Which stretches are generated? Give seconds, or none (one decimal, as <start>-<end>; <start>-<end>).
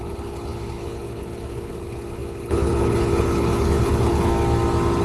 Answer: 0.0-4.3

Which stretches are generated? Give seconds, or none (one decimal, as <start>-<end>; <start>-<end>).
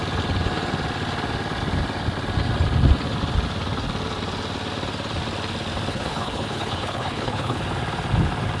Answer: 5.9-7.6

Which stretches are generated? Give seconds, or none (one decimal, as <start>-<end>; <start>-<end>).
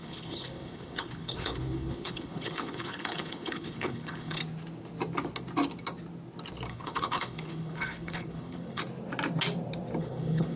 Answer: 0.0-4.4; 6.7-8.8; 10.0-10.6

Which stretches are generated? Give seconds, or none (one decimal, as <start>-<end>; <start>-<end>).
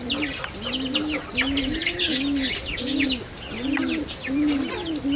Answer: none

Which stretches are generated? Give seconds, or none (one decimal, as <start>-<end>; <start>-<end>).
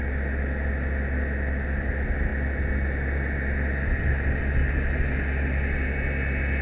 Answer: none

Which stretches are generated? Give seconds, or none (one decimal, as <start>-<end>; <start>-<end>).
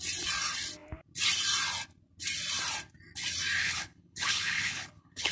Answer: 3.6-5.3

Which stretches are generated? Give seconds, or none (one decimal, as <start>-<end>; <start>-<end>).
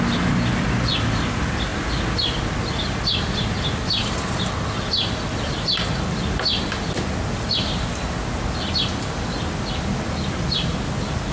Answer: none